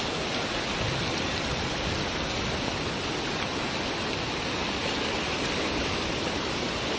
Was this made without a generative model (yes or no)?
yes